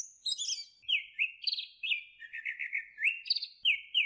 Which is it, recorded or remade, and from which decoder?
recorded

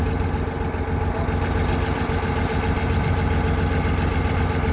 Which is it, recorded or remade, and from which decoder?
recorded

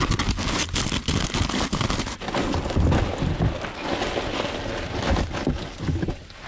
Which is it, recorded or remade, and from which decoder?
recorded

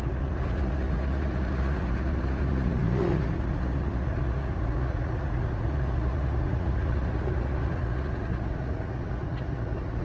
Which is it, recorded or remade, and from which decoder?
remade, vocoder, Vocos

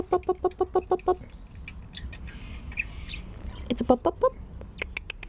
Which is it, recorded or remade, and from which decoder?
recorded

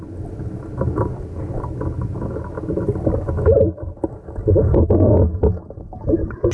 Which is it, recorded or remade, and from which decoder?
recorded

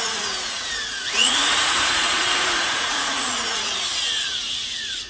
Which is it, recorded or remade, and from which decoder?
remade, vocoder, Vocos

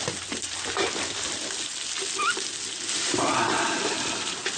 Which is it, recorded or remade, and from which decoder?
recorded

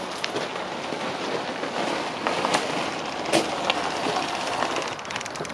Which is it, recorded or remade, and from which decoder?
recorded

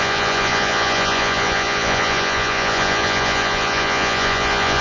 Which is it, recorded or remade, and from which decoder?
remade, vocoder, Vocos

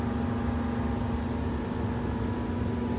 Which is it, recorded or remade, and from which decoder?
recorded